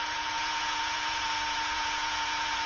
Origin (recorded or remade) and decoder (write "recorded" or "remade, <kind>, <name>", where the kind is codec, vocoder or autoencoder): remade, vocoder, Vocos